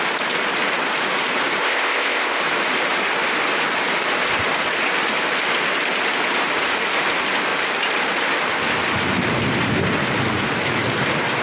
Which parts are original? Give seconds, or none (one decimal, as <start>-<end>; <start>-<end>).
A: 0.0-1.6; 2.4-11.4